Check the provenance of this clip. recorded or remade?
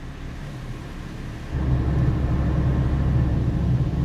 recorded